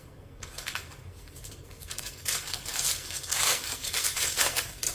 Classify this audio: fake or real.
fake